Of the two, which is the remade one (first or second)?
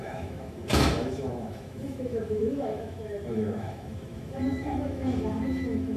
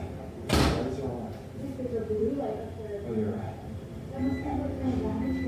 first